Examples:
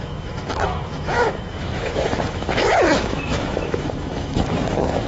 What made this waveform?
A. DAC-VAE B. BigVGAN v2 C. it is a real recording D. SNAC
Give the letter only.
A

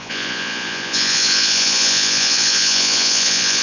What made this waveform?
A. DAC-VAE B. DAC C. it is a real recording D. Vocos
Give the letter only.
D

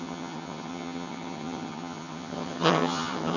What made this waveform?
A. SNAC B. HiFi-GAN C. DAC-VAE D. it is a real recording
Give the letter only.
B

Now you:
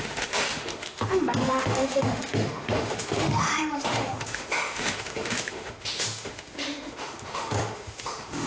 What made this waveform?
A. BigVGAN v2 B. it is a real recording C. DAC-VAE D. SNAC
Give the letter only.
C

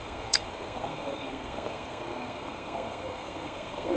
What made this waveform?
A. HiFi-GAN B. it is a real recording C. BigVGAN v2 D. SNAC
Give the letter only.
D